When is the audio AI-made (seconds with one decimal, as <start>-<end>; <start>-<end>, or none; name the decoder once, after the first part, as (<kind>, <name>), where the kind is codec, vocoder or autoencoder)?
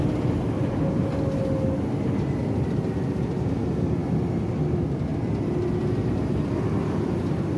4.0-4.5 (vocoder, BigVGAN v2)